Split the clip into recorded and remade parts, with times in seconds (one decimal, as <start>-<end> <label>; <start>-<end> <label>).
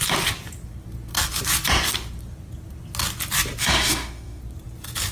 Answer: 0.0-3.6 recorded; 3.6-4.4 remade; 4.4-5.1 recorded